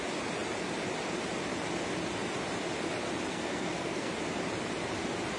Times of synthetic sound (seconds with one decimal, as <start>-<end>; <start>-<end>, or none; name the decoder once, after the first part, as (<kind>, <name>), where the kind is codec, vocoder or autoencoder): 3.3-4.1 (codec, SNAC)